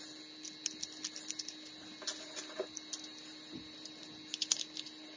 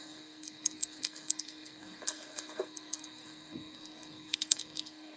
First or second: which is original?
first